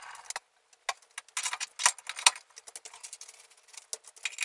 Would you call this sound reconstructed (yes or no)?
no